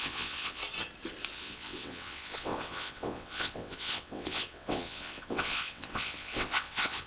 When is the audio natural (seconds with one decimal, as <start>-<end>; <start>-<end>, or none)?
0.6-1.3

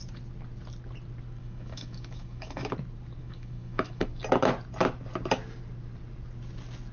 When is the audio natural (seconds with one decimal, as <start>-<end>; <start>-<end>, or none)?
0.0-1.4; 2.7-3.2; 4.1-6.9

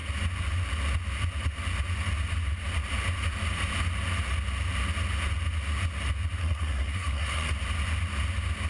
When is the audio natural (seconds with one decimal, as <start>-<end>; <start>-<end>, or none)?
0.0-6.4; 7.5-8.7